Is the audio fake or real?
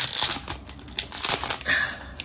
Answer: real